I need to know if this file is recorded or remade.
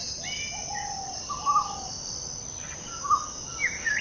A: recorded